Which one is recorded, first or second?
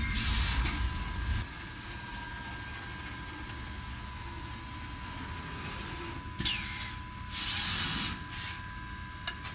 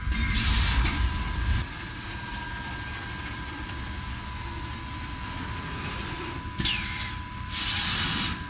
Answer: first